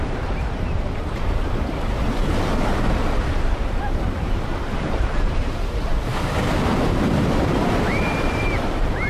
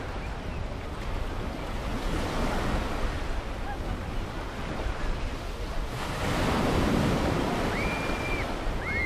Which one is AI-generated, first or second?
first